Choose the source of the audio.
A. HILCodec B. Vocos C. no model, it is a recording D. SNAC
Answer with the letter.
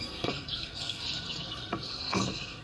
D